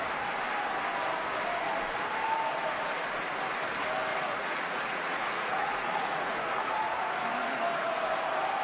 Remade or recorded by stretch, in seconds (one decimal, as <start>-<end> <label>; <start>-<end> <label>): 0.0-4.1 recorded; 4.1-7.1 remade; 7.1-8.6 recorded